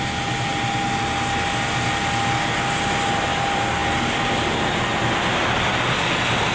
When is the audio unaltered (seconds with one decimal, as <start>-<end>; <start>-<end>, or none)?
0.0-6.5